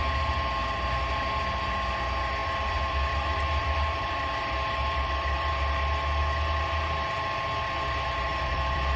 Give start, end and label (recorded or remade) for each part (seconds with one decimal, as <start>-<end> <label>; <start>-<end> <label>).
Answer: 0.0-0.6 recorded; 0.6-1.1 remade; 1.1-2.4 recorded; 2.4-5.5 remade; 5.5-8.3 recorded; 8.3-9.0 remade